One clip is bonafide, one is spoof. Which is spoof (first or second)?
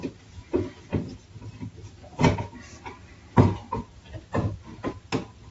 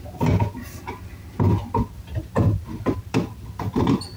second